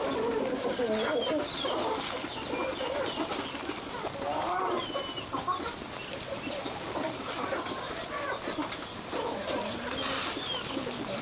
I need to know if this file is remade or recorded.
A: recorded